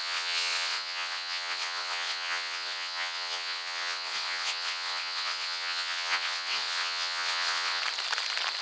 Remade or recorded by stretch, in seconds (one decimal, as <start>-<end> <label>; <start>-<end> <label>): 0.0-7.8 remade; 7.8-8.6 recorded